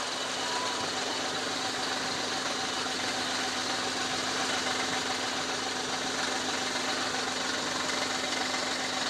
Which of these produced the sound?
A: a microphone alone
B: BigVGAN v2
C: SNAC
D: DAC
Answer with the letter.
A